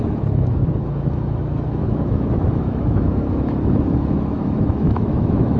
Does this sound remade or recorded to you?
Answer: remade